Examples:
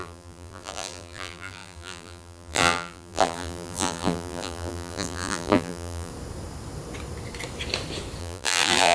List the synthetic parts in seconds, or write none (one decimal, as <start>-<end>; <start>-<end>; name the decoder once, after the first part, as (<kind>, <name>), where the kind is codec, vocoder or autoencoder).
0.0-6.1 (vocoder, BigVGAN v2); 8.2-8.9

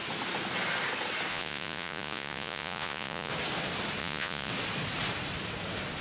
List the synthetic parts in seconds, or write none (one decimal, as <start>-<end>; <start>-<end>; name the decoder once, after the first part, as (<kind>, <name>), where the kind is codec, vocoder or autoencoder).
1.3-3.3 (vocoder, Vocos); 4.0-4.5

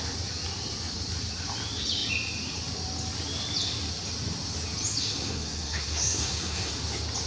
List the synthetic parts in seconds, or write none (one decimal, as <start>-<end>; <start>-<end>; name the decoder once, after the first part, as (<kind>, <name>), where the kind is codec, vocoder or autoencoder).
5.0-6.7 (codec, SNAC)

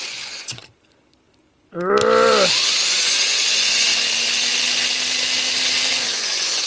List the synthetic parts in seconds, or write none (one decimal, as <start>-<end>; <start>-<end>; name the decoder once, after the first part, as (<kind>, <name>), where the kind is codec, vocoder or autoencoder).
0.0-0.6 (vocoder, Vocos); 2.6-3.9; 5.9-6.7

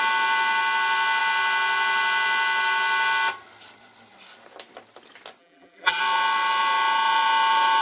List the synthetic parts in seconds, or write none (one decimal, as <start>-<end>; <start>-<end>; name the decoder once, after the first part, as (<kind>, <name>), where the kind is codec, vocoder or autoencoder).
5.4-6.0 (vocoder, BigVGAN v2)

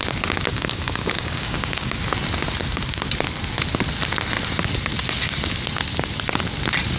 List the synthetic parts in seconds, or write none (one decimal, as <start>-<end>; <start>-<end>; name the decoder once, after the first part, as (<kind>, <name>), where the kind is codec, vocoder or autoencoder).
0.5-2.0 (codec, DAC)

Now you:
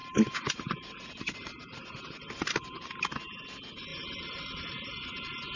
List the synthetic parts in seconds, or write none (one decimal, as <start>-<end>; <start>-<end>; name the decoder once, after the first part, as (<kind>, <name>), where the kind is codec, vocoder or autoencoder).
0.0-3.4 (vocoder, BigVGAN v2); 3.9-5.6

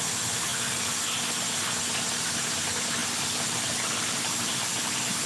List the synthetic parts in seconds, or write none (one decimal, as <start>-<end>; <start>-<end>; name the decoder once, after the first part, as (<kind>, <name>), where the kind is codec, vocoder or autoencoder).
3.0-5.3 (vocoder, BigVGAN v2)